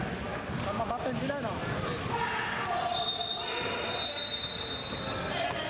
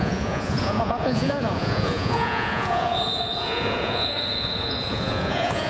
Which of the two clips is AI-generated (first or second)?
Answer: second